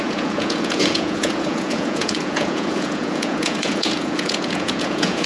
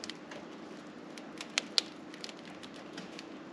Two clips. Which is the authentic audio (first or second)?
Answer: second